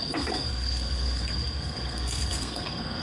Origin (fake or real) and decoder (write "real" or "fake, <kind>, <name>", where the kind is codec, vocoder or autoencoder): fake, codec, SNAC